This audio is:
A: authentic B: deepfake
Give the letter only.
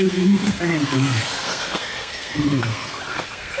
B